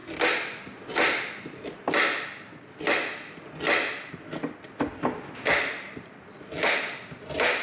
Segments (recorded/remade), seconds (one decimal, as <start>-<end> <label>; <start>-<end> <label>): 0.0-4.9 recorded; 4.9-6.2 remade; 6.2-7.6 recorded